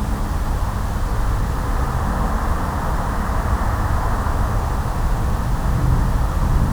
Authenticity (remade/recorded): recorded